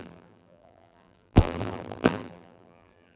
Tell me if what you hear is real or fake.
fake